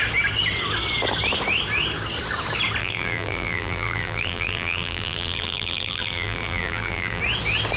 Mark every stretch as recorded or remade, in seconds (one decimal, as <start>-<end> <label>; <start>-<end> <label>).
0.0-2.8 recorded; 2.8-7.2 remade; 7.2-7.8 recorded

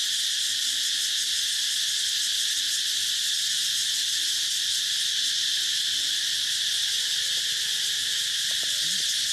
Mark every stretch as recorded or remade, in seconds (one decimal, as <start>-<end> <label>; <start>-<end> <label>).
0.0-9.3 recorded

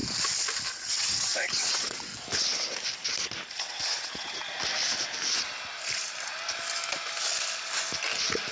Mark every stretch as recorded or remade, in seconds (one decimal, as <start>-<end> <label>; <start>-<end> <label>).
0.0-0.7 recorded; 0.7-2.1 remade; 2.1-3.6 recorded; 3.6-4.4 remade; 4.4-8.5 recorded

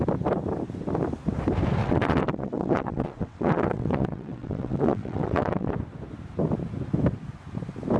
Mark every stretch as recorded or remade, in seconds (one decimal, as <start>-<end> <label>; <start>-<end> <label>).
0.0-1.8 recorded; 1.8-5.7 remade; 5.7-8.0 recorded

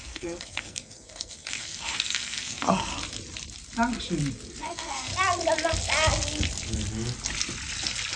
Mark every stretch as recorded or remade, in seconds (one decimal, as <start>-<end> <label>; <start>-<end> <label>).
0.0-2.9 remade; 2.9-4.6 recorded; 4.6-5.1 remade; 5.1-8.2 recorded

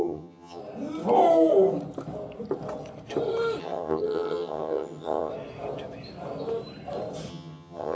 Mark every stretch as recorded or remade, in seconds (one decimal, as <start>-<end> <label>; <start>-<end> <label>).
0.0-0.6 remade; 0.6-3.6 recorded; 3.6-5.3 remade; 5.3-7.3 recorded; 7.3-8.0 remade

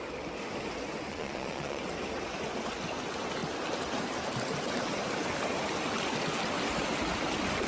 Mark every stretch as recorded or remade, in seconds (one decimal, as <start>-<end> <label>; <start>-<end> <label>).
0.0-1.1 recorded; 1.1-1.8 remade; 1.8-7.7 recorded